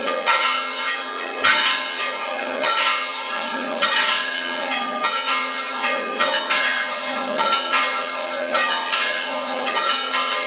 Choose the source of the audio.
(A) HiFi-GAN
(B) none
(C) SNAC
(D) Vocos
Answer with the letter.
A